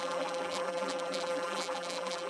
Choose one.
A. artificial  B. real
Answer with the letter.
A